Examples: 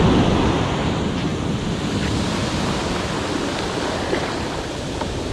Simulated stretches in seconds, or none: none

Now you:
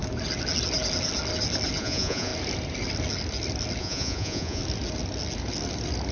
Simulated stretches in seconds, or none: 1.8-2.3 (vocoder, Vocos); 3.8-4.6